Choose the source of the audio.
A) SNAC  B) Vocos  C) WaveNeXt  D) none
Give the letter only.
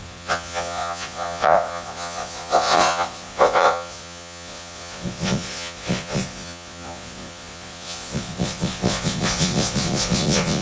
B